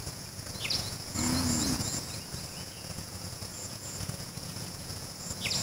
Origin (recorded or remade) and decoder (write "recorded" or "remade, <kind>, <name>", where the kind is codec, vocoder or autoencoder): remade, vocoder, Vocos